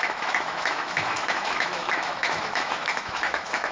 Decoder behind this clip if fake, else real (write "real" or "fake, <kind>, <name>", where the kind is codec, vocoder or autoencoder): fake, autoencoder, DAC-VAE